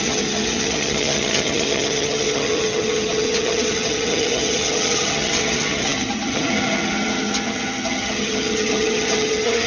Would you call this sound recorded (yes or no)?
no